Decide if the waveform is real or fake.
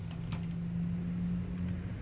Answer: real